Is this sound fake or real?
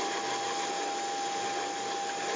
real